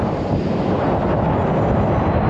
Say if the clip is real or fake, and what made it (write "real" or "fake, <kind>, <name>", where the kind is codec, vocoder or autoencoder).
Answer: real